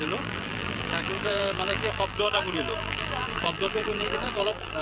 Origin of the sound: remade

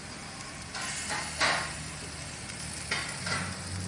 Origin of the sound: recorded